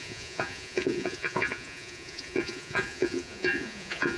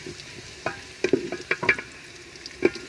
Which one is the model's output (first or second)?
first